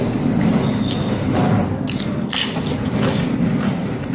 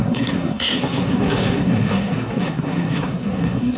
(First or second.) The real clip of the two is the first